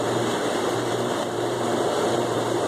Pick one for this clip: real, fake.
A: fake